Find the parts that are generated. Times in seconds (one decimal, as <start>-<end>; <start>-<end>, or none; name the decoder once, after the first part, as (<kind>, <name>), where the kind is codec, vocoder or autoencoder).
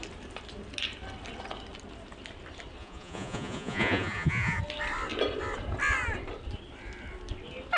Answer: 2.8-4.6 (vocoder, Vocos)